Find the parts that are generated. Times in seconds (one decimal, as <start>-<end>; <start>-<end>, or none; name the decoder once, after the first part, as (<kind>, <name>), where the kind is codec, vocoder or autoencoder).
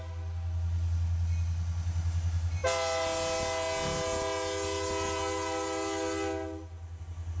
none